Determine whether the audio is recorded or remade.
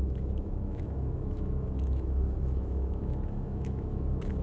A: remade